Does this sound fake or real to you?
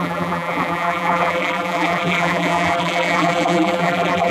fake